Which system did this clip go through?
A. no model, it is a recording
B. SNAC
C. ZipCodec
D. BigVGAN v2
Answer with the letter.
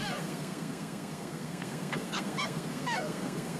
B